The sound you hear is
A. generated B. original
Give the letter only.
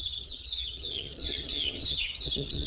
A